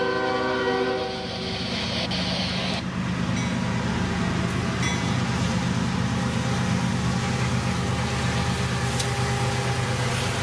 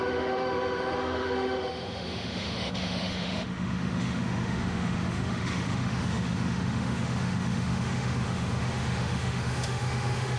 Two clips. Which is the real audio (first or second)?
first